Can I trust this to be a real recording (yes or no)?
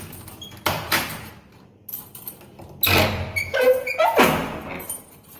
yes